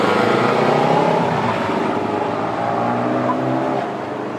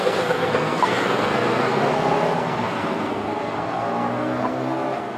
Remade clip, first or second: second